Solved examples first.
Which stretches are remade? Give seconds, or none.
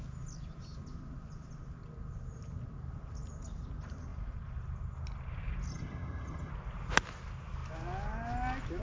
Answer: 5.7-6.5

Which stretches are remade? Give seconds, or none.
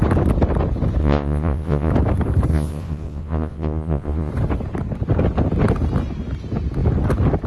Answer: 1.0-1.9; 2.5-4.3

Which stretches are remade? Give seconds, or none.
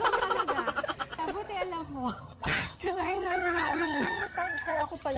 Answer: 1.8-5.2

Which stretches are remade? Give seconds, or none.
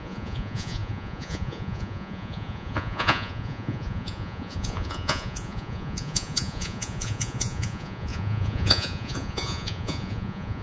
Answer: 0.0-10.6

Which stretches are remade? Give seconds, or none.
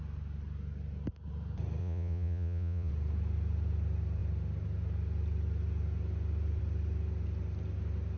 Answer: 1.8-2.9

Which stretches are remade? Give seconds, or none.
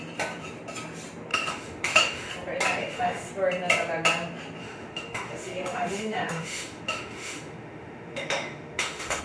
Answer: 1.3-2.3; 2.8-3.3; 4.6-9.2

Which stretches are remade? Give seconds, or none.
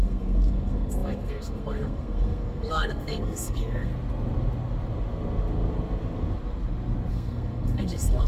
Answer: 0.0-3.9; 7.1-8.3